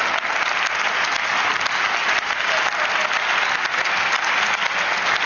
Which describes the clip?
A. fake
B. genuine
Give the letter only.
B